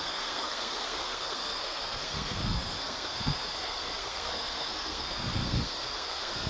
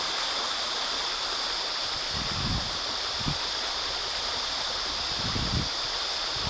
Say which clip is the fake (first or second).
first